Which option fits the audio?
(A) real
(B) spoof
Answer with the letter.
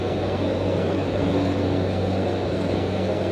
B